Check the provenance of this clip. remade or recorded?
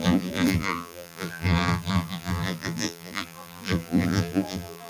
remade